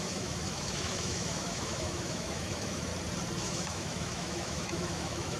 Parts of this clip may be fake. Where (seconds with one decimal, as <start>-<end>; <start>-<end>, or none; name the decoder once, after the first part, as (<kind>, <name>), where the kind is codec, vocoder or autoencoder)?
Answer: 0.0-2.9 (autoencoder, DAC-VAE); 3.4-5.4